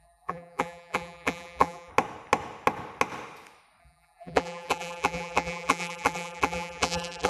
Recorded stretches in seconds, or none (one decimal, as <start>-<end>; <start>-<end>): 1.9-3.8